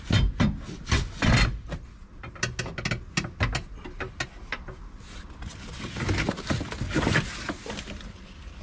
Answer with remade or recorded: recorded